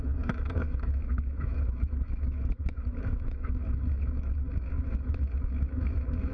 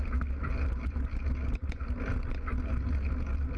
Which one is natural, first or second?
second